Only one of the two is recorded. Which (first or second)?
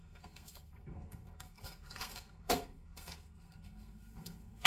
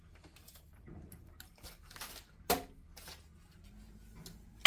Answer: second